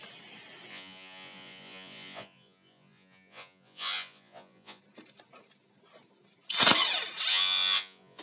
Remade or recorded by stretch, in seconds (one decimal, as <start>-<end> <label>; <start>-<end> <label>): 0.0-0.7 recorded; 0.7-4.8 remade; 4.8-7.3 recorded; 7.3-8.2 remade